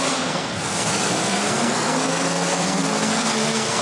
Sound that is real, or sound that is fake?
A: fake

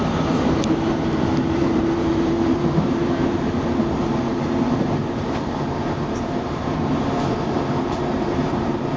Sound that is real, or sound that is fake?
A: fake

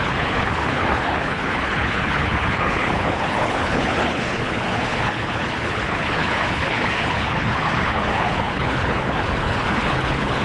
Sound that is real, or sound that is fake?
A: fake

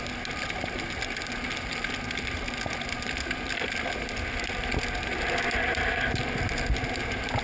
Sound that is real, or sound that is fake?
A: real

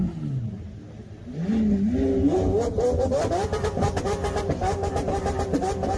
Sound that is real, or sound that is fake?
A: real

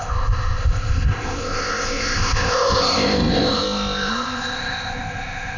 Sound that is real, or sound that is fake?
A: fake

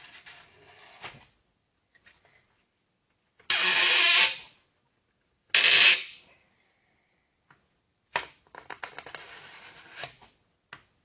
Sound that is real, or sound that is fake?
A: real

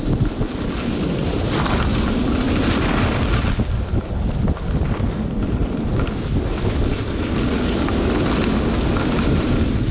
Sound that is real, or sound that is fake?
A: real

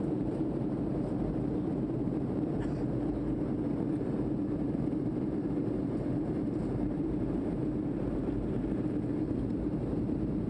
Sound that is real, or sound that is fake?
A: fake